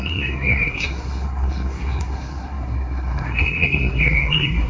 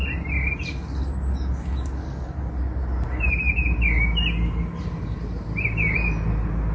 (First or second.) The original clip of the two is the second